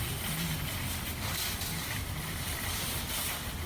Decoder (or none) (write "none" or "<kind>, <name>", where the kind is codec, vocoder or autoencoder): none